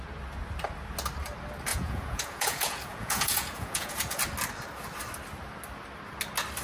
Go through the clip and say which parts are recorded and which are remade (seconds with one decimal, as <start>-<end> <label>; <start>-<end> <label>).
0.0-1.7 recorded; 1.7-4.2 remade; 4.2-6.6 recorded